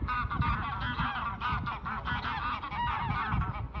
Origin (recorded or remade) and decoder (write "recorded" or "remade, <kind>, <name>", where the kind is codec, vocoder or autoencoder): recorded